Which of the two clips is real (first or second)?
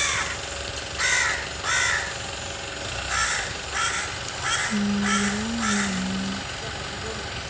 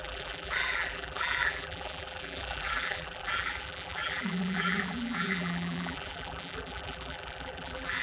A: first